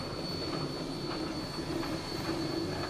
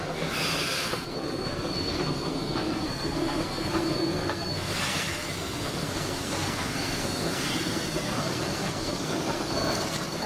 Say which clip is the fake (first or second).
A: second